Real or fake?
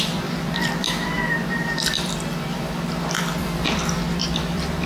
fake